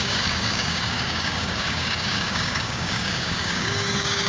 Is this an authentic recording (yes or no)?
no